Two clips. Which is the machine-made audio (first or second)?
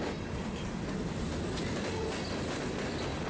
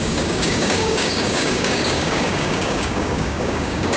second